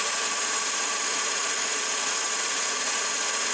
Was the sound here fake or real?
fake